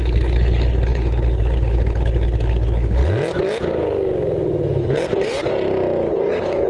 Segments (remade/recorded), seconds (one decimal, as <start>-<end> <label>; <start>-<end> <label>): 0.0-3.0 remade; 3.0-4.8 recorded; 4.8-5.5 remade; 5.5-6.1 recorded; 6.1-6.7 remade